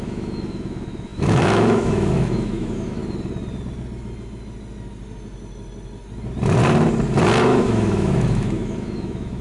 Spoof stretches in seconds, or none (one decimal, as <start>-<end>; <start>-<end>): 0.0-3.0; 7.4-9.4